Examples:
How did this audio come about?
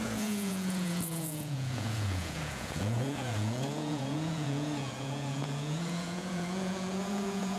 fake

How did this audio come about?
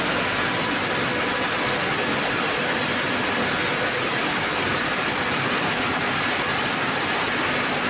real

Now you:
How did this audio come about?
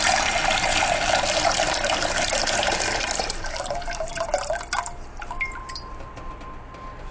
real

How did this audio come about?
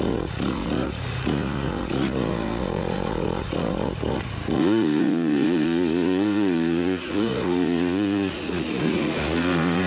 fake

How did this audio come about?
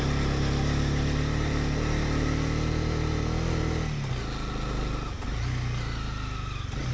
real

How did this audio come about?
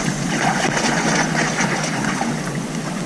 fake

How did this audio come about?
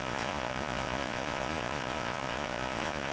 fake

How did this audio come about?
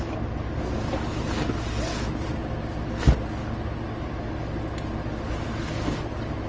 real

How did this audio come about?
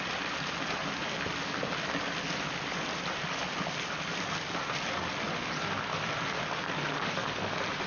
real